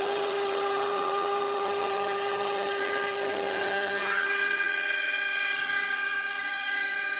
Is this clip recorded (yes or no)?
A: no